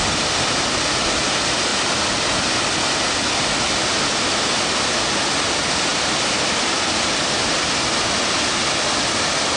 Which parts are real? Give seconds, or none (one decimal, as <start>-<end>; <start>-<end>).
0.0-9.6